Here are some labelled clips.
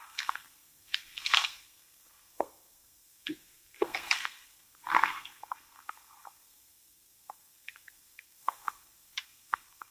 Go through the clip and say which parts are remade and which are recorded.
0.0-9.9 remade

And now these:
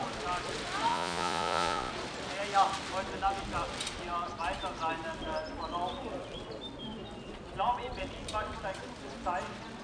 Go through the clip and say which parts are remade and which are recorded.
0.0-0.9 recorded; 0.9-1.9 remade; 1.9-9.8 recorded

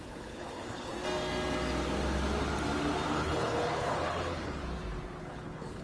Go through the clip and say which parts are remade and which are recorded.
0.0-0.9 remade; 0.9-3.1 recorded; 3.1-4.6 remade; 4.6-5.2 recorded; 5.2-5.8 remade